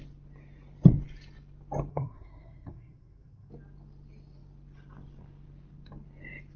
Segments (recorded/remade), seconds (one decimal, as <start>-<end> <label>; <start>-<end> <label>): 0.0-1.9 recorded; 1.9-3.5 remade; 3.5-6.6 recorded